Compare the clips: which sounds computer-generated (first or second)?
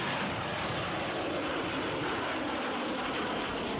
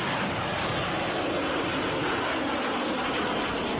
first